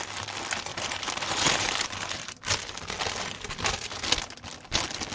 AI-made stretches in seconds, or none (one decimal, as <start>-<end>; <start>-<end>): 0.7-2.4